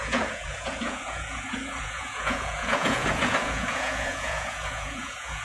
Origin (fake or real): fake